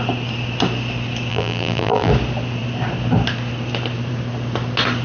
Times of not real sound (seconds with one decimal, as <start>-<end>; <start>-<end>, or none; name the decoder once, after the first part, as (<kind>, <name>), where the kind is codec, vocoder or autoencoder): 1.3-2.1 (vocoder, BigVGAN v2)